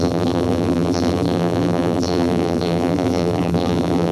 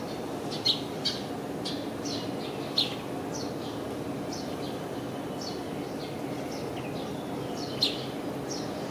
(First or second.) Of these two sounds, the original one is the second